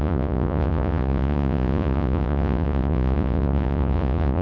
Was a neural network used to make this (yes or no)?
yes